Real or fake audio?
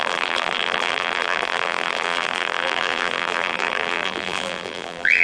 fake